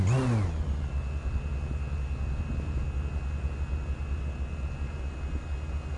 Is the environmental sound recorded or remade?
recorded